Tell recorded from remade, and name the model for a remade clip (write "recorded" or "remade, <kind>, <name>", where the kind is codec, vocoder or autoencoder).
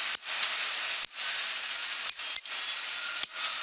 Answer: recorded